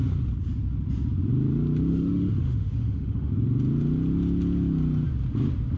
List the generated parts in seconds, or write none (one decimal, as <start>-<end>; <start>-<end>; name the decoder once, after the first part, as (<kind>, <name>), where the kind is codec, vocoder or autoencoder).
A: 1.9-3.3 (autoencoder, DAC-VAE)